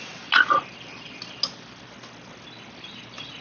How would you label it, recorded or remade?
recorded